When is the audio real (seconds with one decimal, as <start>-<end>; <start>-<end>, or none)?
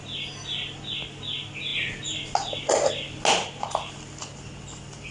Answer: 0.0-5.1